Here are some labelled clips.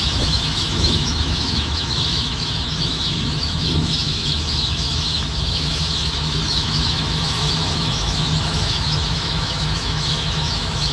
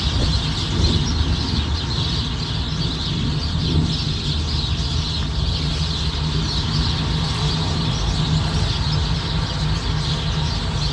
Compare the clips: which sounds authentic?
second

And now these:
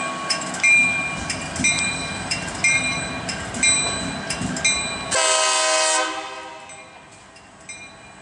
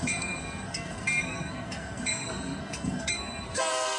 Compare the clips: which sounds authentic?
first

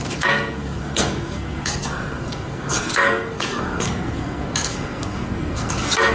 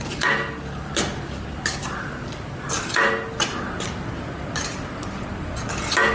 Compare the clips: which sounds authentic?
second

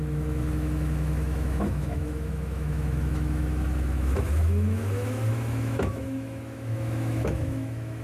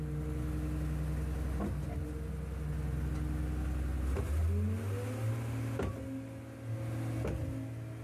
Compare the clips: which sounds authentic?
second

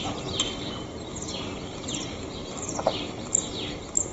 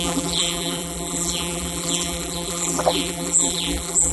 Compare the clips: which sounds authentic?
first